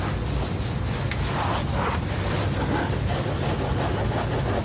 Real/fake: real